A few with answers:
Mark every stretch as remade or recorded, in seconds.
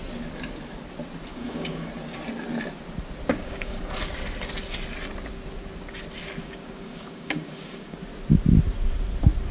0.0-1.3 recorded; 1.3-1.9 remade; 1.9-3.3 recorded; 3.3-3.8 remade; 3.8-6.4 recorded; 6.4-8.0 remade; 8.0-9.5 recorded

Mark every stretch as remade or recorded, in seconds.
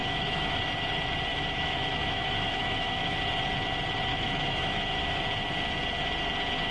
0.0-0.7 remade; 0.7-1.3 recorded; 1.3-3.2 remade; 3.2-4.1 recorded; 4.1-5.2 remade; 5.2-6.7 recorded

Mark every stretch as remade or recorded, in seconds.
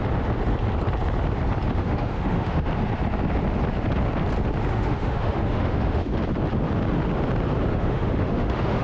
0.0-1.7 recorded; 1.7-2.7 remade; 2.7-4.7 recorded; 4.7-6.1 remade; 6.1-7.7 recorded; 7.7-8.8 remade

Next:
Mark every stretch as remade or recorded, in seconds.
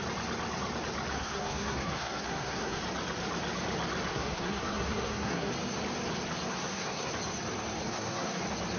0.0-1.1 recorded; 1.1-2.8 remade; 2.8-4.1 recorded; 4.1-5.5 remade; 5.5-6.5 recorded; 6.5-7.1 remade; 7.1-7.9 recorded; 7.9-8.4 remade; 8.4-8.8 recorded